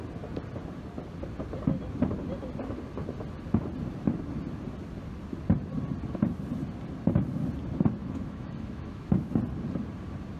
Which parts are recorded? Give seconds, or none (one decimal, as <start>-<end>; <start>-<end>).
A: 0.0-8.0; 9.3-10.4